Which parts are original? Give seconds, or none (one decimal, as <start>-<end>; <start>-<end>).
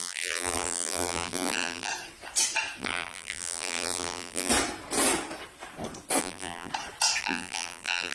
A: 1.9-2.8; 4.5-6.2; 6.7-7.2